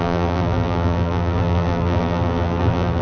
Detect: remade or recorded remade